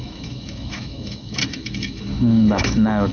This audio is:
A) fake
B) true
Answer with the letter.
A